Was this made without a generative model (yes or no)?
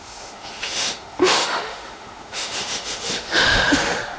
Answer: no